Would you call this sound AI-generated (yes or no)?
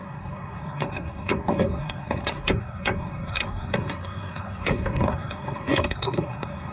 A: yes